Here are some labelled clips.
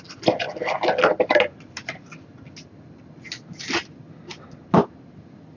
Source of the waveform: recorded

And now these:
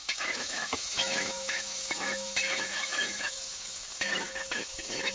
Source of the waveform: remade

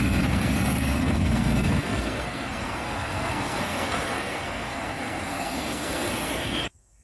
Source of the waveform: remade